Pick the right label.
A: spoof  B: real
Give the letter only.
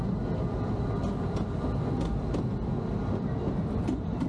B